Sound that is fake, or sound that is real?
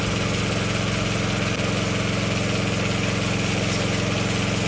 real